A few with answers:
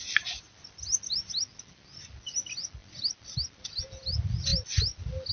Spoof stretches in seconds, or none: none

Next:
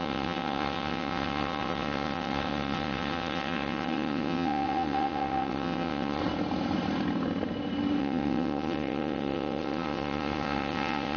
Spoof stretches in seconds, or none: 0.0-6.2 (vocoder, WaveNeXt); 8.0-11.2